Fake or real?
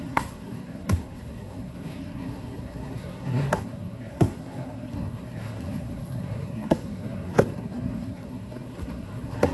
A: fake